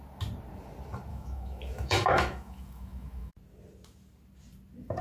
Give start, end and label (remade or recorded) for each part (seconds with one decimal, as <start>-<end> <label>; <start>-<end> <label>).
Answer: 0.0-1.1 recorded; 1.1-3.3 remade; 3.3-5.0 recorded